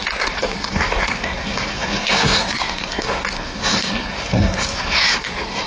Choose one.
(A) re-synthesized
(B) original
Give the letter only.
A